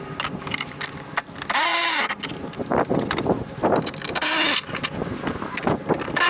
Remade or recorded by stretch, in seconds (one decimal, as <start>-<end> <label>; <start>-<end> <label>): 0.0-6.3 recorded